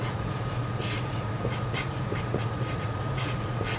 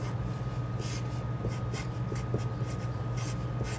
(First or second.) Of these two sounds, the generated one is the first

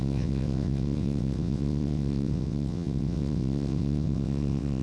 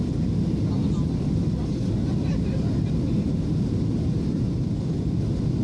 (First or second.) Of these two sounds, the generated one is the first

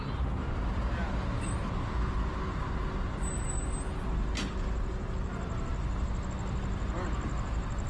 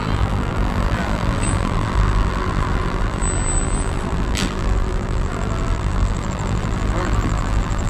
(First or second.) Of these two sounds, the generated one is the second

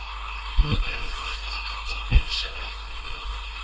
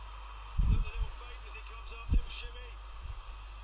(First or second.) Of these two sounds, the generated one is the first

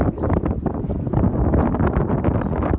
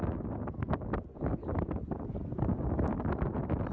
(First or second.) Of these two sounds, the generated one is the first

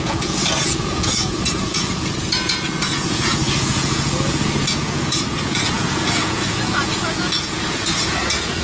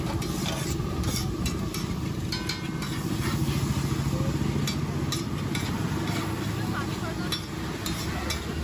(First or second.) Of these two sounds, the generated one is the first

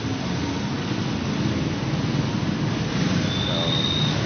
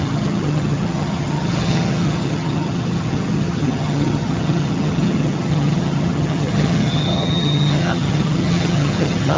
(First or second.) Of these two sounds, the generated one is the second